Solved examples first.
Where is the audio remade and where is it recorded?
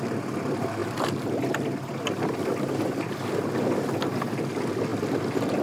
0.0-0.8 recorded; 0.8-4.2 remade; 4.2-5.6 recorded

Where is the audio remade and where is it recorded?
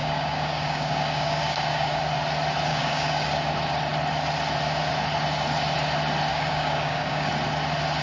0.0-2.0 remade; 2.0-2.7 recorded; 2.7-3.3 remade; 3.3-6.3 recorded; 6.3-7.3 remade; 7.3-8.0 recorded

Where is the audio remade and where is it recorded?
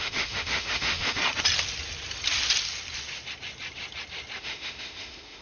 0.0-1.2 remade; 1.2-4.4 recorded; 4.4-5.4 remade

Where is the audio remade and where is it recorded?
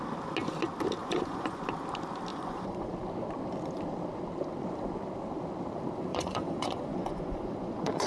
0.0-1.0 recorded; 1.0-1.6 remade; 1.6-2.3 recorded; 2.3-2.9 remade; 2.9-6.1 recorded; 6.1-8.1 remade